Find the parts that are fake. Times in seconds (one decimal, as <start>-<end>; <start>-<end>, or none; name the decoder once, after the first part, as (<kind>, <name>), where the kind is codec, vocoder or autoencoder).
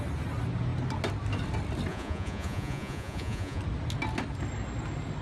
1.9-3.6 (vocoder, Vocos)